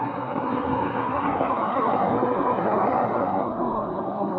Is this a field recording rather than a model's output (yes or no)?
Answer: no